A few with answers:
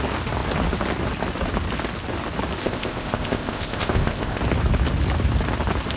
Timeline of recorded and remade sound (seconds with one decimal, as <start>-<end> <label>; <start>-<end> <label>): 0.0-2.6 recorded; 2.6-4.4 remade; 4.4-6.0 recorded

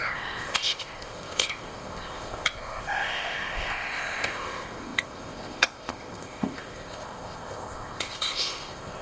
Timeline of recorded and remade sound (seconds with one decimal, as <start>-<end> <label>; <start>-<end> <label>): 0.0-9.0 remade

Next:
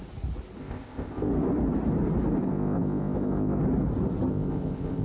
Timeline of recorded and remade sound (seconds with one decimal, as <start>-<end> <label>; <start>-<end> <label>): 0.0-0.6 recorded; 0.6-1.3 remade; 1.3-2.4 recorded; 2.4-3.6 remade; 3.6-4.3 recorded; 4.3-5.0 remade

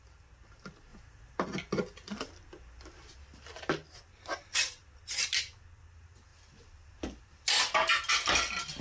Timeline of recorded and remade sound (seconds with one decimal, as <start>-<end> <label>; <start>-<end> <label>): 0.0-8.8 recorded